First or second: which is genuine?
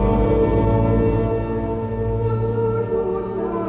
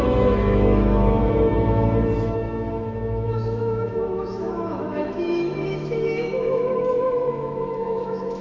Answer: first